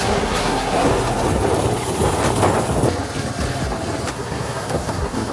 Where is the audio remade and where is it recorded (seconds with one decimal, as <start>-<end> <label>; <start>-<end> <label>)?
0.0-0.9 remade; 0.9-4.1 recorded; 4.1-5.3 remade